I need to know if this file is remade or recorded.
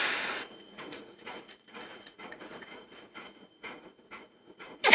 remade